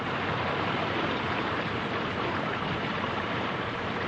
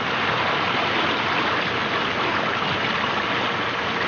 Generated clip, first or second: first